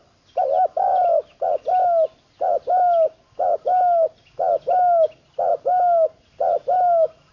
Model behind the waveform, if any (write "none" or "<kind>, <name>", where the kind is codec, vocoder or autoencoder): none